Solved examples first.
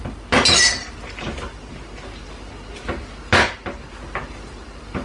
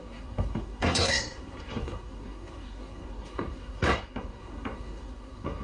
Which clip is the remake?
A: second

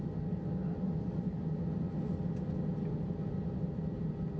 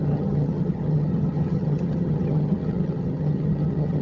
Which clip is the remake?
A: second